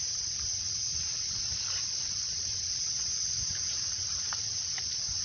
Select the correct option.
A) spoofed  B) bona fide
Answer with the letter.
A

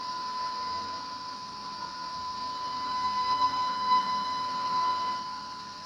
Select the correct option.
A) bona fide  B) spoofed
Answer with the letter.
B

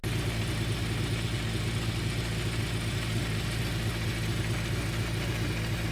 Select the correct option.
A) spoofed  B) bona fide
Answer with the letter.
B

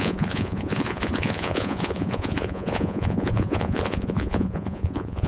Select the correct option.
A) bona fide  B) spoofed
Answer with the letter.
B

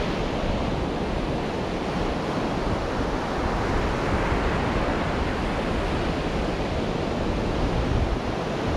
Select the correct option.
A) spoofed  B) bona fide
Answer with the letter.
B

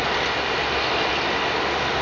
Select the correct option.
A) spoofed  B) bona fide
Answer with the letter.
B